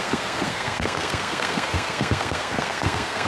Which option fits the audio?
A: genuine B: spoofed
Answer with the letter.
B